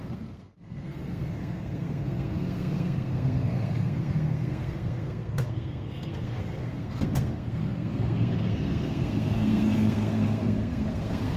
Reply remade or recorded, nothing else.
remade